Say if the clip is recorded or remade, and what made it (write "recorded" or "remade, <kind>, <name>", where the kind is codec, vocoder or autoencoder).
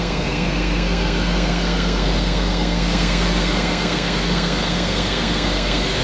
remade, codec, SNAC